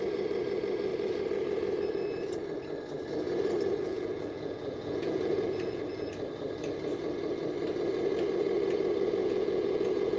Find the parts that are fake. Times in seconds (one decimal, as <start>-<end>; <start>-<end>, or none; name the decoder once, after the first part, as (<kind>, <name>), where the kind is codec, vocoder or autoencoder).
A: 3.8-6.1 (vocoder, Vocos); 9.2-10.2